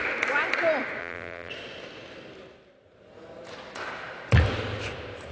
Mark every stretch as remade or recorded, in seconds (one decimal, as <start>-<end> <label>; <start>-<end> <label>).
0.0-1.0 recorded; 1.0-1.5 remade; 1.5-5.3 recorded